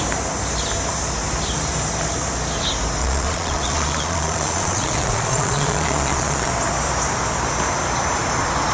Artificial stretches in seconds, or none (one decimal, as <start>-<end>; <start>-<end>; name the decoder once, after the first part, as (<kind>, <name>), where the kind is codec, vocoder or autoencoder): 3.0-6.5 (vocoder, Vocos)